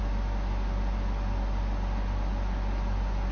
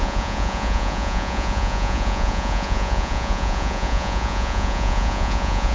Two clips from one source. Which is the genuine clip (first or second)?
first